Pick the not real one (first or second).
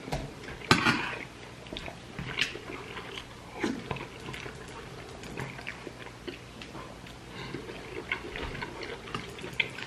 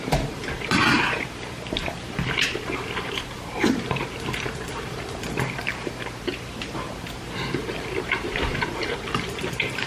second